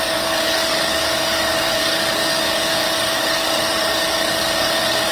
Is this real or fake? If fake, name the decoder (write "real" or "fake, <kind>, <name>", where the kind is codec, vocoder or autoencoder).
fake, codec, DAC